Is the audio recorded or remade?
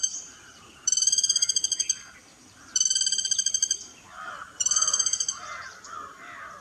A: remade